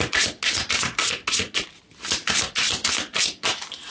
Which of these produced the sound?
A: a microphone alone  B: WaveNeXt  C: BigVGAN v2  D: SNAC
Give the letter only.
A